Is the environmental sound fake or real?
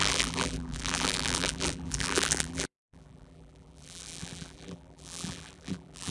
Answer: fake